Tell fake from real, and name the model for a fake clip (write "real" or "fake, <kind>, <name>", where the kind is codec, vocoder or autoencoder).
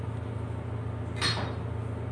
real